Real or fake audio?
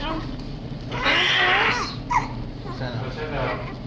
real